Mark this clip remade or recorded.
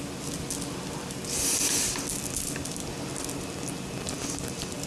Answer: recorded